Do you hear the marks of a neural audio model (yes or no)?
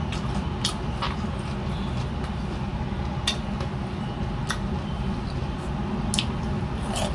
no